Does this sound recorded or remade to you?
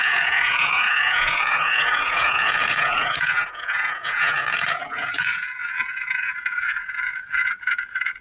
remade